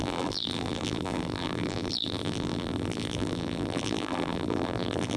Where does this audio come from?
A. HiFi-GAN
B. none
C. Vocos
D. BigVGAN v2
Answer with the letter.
D